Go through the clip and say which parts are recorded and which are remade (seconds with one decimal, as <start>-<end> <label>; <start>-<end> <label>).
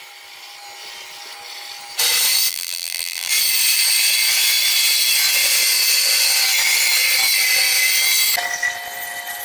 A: 0.0-2.5 recorded; 2.5-3.3 remade; 3.3-9.4 recorded